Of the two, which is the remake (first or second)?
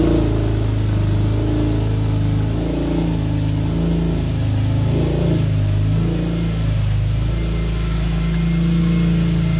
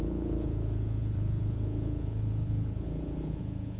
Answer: second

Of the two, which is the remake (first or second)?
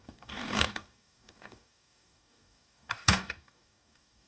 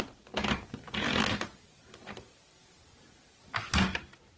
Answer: first